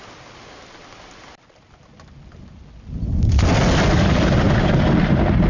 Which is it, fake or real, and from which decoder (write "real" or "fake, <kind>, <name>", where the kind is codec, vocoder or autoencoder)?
real